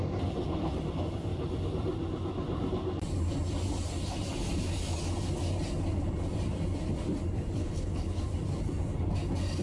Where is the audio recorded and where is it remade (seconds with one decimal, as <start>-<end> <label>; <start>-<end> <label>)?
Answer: 0.0-7.6 recorded; 7.6-8.2 remade; 8.2-9.6 recorded